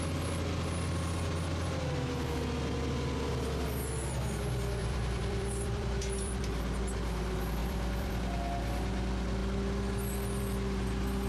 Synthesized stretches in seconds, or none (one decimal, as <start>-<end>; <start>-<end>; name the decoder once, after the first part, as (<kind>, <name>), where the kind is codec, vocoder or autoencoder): 4.8-6.8 (vocoder, BigVGAN v2); 7.6-8.1